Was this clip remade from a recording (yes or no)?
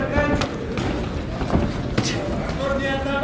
no